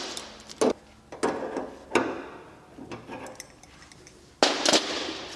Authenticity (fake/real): real